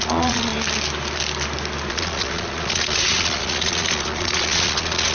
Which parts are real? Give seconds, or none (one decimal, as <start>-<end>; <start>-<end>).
0.5-1.9